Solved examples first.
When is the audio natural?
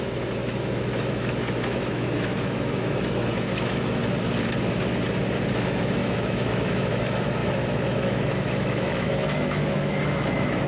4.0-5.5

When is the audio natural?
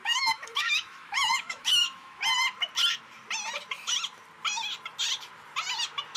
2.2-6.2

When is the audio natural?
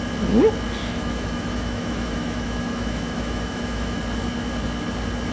0.0-0.8; 4.0-5.3